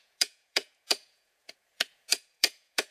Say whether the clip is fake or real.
fake